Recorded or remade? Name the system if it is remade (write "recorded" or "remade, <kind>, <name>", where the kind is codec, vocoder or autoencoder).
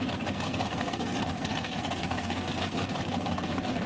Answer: remade, codec, SNAC